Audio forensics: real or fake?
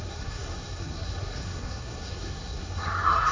fake